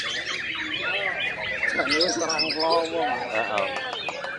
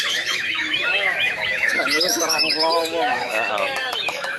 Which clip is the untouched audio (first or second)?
first